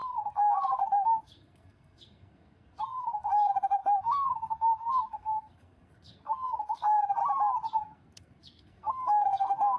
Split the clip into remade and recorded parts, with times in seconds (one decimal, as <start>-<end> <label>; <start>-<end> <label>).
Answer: 0.0-7.2 remade; 7.2-7.8 recorded; 7.8-9.8 remade